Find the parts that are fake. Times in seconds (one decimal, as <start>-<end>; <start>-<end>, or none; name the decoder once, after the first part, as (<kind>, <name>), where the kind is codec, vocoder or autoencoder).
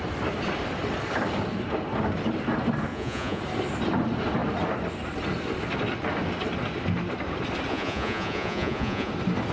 2.9-3.4 (vocoder, Vocos); 7.7-9.1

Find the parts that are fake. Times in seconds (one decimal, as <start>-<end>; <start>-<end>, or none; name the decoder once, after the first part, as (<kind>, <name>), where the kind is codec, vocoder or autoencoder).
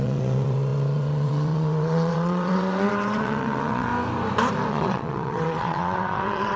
0.0-3.9 (vocoder, WaveNeXt); 4.7-6.6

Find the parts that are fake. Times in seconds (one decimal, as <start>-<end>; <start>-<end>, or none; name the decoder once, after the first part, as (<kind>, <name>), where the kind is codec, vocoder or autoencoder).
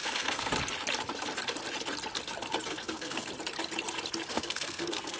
0.0-0.5 (codec, SNAC); 2.7-3.3; 4.3-5.2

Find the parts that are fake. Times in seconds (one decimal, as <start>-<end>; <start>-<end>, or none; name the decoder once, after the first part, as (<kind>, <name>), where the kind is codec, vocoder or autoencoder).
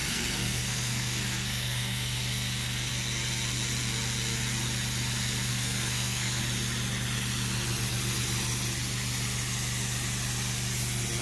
0.0-2.9 (codec, SNAC); 5.5-6.4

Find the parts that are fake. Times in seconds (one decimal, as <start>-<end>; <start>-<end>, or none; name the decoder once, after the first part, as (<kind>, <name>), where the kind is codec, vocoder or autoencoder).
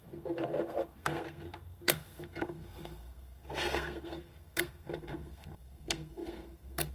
0.0-6.9 (codec, SNAC)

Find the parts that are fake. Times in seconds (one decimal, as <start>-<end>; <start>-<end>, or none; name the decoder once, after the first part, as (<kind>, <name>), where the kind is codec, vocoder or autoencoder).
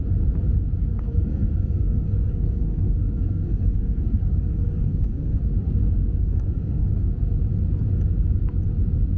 0.9-5.4 (codec, SNAC); 6.2-7.1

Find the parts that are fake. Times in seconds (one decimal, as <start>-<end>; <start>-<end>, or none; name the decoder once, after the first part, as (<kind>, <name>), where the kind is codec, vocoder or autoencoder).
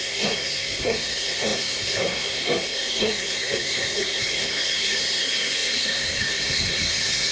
0.0-7.3 (codec, SNAC)